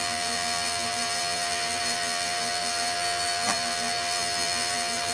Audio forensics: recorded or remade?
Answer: remade